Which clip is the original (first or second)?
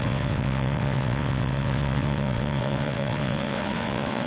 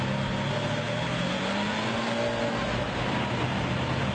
second